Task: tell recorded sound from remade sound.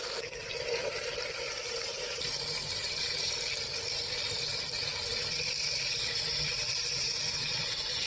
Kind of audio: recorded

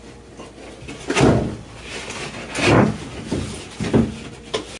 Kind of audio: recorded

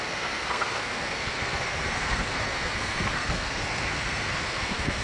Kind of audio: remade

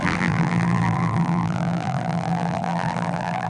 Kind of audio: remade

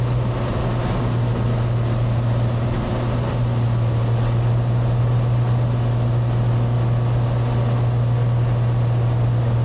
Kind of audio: recorded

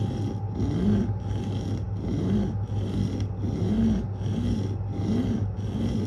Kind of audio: recorded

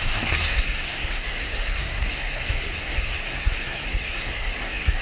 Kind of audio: remade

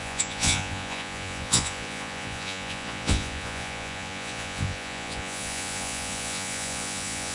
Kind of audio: remade